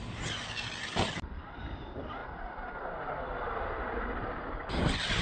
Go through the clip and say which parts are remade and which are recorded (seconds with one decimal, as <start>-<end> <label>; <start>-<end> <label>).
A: 0.0-5.2 recorded